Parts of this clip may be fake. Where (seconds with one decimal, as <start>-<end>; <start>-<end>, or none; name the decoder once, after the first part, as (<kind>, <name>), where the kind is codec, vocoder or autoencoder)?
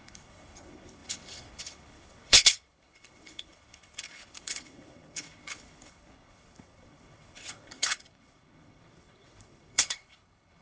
0.0-10.6 (codec, HILCodec)